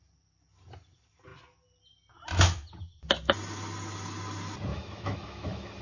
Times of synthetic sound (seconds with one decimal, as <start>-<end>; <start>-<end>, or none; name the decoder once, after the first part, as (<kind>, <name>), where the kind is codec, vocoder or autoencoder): 4.7-5.8 (autoencoder, DAC-VAE)